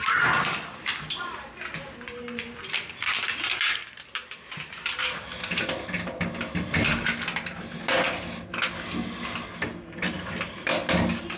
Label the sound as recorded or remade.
recorded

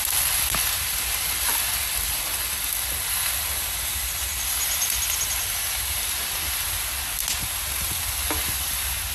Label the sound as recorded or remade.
recorded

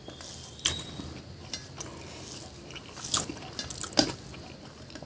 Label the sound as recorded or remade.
recorded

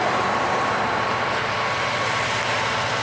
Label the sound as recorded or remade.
recorded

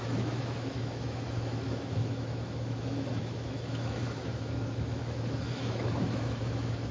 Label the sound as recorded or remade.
remade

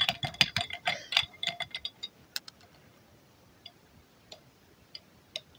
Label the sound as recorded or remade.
recorded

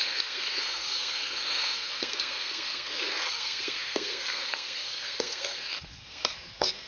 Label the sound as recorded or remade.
remade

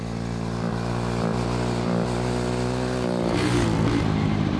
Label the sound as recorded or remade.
recorded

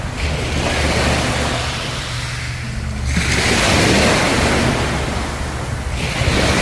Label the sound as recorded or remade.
recorded